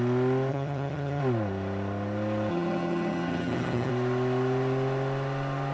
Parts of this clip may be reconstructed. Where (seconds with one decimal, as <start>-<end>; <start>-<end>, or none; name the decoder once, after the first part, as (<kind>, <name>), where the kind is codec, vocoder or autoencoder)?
0.5-1.2 (vocoder, HiFi-GAN); 2.5-3.9